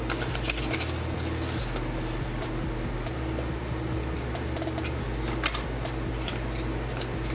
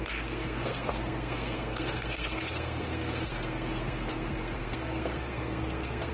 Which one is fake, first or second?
second